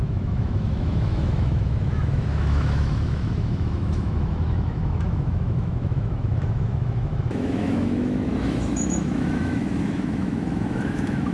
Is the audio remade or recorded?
remade